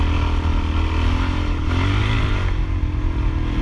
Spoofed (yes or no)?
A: no